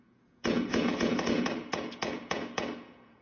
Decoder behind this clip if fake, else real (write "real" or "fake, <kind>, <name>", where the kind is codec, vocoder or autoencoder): fake, vocoder, Vocos